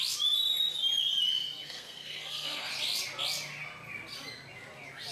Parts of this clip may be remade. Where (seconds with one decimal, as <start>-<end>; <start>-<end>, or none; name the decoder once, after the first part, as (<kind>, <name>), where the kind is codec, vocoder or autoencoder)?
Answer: 1.6-2.7 (codec, SNAC)